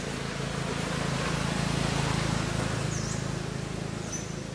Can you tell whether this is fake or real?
real